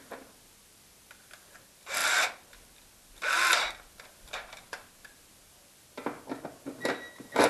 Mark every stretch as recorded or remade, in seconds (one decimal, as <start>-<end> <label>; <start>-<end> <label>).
0.0-7.5 recorded